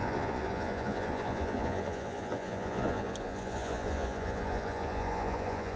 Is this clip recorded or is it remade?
remade